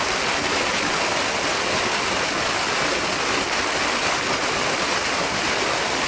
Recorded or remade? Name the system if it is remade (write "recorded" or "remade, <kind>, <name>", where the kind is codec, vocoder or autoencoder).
recorded